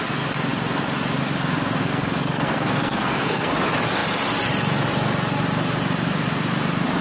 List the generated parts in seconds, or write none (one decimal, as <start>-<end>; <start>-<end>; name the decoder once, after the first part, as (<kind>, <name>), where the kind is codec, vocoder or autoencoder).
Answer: 1.8-3.5 (codec, SNAC)